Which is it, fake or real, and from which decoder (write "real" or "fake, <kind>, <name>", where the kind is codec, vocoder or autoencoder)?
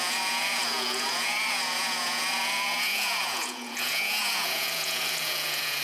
fake, vocoder, Vocos